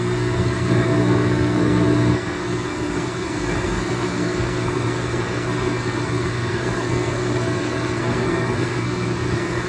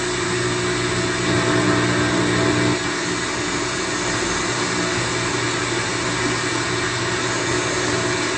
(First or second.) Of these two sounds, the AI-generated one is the first